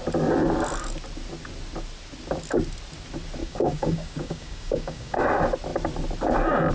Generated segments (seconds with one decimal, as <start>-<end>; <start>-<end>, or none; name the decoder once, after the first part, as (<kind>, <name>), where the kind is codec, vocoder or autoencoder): 3.4-5.2 (codec, DAC)